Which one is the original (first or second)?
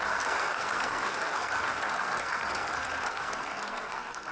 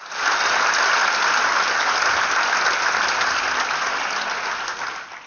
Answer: second